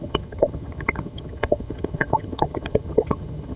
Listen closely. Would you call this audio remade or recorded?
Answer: remade